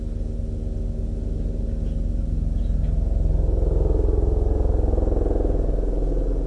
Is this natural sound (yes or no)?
yes